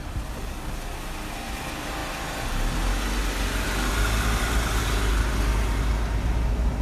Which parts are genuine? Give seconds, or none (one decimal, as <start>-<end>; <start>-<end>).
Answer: 0.0-6.8